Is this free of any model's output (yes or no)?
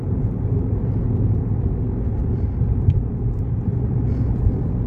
yes